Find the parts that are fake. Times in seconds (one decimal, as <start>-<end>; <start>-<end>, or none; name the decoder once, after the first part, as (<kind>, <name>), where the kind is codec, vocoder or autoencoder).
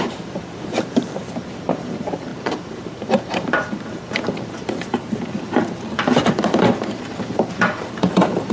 0.0-8.5 (vocoder, BigVGAN v2)